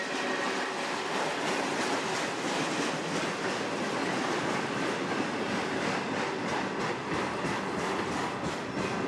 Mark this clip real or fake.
real